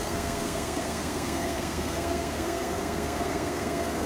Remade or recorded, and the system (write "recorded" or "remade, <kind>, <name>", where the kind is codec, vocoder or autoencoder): remade, codec, SNAC